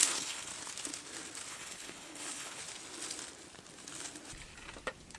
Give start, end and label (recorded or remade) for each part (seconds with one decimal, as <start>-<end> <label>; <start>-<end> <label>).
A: 0.0-0.5 remade; 0.5-1.5 recorded; 1.5-2.6 remade; 2.6-5.2 recorded